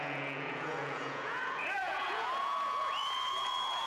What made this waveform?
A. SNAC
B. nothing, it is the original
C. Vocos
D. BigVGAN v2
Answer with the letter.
C